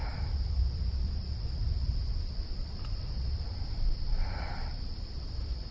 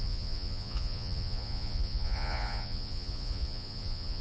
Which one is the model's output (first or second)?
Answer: second